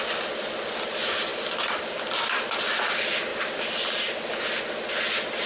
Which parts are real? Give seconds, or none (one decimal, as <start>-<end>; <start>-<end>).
0.0-5.5